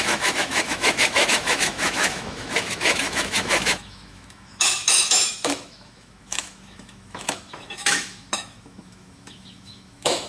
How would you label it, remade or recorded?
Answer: remade